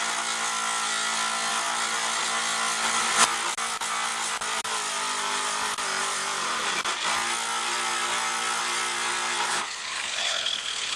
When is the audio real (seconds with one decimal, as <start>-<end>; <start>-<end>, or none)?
0.0-9.5